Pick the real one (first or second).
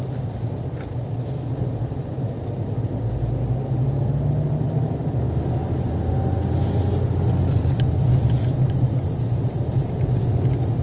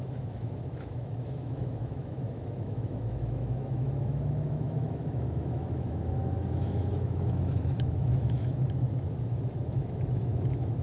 first